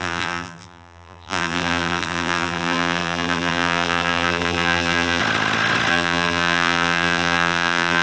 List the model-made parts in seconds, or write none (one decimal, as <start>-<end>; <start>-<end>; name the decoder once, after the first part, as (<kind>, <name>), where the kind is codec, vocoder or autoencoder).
0.0-5.2 (vocoder, BigVGAN v2); 5.9-8.0